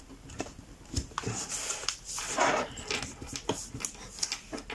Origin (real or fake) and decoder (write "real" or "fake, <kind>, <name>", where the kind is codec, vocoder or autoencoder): real